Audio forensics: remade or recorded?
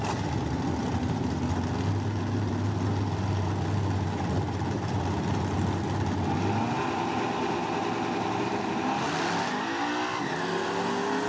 recorded